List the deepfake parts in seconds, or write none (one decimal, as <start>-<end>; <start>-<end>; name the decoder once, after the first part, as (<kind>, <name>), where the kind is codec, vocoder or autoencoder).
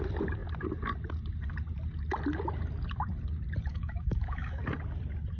3.7-4.6 (autoencoder, DAC-VAE)